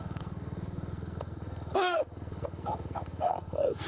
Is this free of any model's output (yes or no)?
no